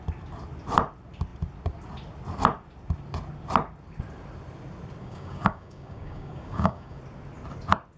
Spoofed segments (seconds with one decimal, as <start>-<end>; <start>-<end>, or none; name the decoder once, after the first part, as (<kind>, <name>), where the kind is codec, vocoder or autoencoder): 5.0-7.0 (codec, DAC)